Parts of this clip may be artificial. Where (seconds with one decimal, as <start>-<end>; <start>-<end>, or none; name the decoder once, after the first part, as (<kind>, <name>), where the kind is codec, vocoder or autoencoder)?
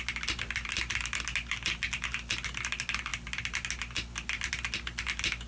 none